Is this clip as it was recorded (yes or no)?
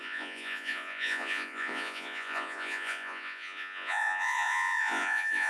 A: no